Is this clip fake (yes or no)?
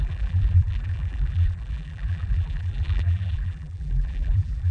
yes